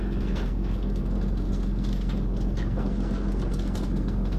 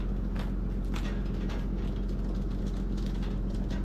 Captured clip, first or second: second